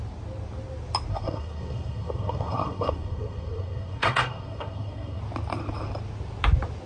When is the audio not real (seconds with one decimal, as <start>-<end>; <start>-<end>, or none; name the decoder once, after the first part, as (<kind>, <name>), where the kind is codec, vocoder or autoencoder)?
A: 1.1-5.2 (codec, SNAC)